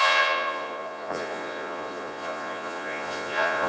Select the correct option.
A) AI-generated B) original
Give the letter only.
A